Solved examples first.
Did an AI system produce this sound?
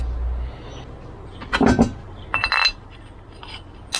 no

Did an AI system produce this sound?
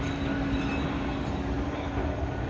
no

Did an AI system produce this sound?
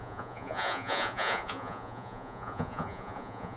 yes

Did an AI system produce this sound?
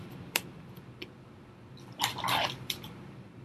yes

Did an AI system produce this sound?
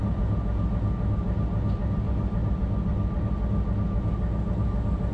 no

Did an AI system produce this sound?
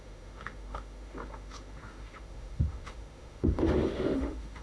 yes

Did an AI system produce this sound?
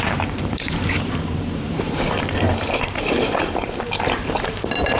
yes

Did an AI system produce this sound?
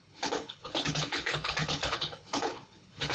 yes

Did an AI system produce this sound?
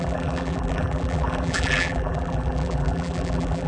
yes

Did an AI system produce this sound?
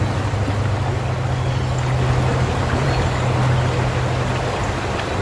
no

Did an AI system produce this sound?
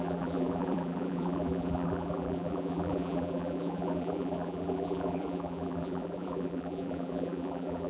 yes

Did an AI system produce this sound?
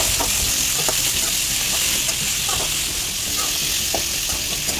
no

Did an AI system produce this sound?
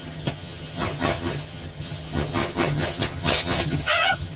yes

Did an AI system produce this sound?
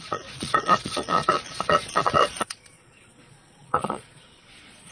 yes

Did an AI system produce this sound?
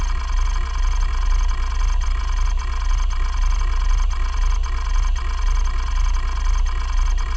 no